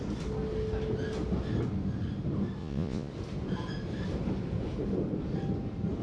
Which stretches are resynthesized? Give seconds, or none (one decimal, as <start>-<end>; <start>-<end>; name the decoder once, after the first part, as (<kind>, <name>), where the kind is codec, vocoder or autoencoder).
2.6-3.1 (vocoder, Vocos)